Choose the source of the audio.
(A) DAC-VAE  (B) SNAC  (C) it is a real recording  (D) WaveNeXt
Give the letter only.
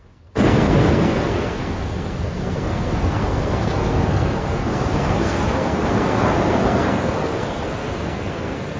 B